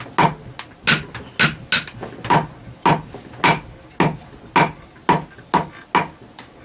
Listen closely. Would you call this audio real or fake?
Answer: real